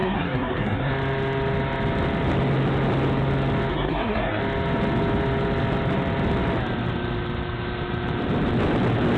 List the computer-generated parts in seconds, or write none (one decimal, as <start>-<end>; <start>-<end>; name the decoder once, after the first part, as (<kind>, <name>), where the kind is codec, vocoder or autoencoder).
0.0-0.9 (codec, SNAC); 3.7-4.4

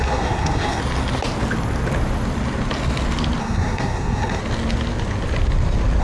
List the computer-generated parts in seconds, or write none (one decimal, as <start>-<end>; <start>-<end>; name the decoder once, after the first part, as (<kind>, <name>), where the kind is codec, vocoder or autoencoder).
0.0-0.8 (codec, SNAC); 3.4-4.4

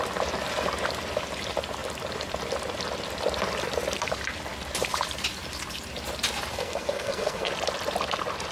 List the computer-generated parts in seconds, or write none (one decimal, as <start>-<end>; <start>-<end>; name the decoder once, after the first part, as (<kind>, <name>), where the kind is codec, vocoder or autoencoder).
6.5-7.5 (codec, SNAC)

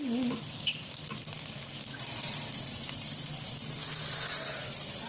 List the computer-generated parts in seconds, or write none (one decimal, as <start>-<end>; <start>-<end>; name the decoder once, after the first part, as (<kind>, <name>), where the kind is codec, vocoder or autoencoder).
none

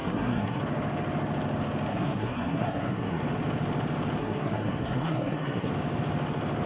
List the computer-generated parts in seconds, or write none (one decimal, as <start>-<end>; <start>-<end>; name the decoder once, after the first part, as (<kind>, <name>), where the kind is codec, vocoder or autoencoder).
0.0-0.6 (codec, SNAC); 1.9-3.2; 4.2-5.7

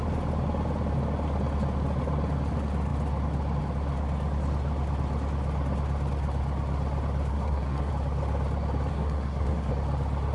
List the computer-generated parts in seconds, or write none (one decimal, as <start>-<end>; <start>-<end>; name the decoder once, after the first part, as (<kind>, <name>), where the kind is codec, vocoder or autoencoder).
7.3-7.9 (codec, SNAC); 8.9-9.7

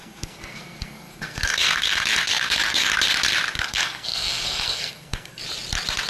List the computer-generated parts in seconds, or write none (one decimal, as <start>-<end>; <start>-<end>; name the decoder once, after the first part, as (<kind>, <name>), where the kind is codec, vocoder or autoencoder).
0.0-2.9 (codec, SNAC); 3.6-5.4

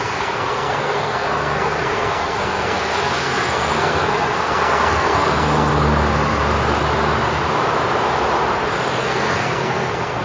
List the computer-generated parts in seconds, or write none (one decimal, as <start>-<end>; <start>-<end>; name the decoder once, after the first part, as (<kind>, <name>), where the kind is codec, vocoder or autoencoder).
0.0-5.7 (codec, SNAC); 9.0-10.2